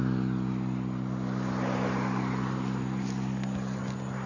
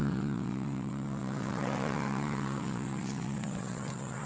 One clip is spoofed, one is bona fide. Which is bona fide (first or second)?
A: first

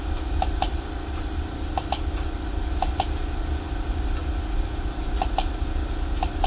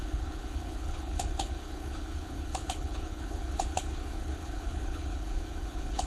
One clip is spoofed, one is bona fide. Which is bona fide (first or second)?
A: first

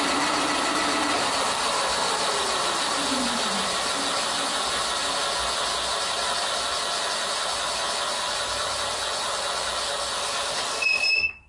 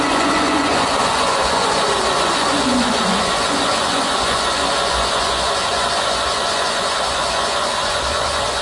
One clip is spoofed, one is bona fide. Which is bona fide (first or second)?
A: first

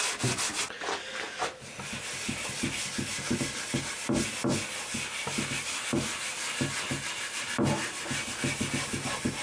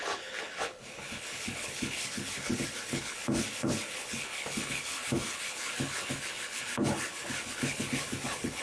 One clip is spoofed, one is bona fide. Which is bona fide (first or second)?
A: first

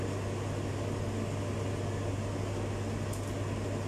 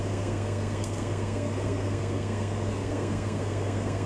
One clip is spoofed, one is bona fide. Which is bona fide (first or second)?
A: first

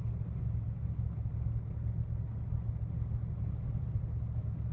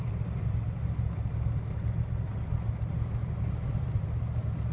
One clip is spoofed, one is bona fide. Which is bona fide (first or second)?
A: first